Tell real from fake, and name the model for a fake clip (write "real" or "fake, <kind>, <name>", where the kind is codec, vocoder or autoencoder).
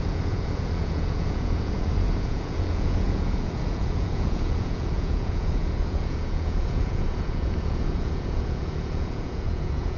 fake, vocoder, Vocos